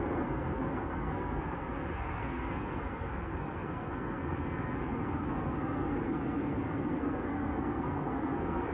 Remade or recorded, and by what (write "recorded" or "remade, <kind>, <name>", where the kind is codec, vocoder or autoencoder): remade, codec, SNAC